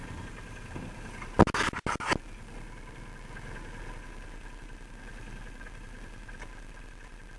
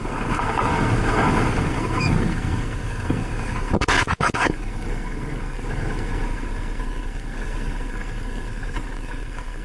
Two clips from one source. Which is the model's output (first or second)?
second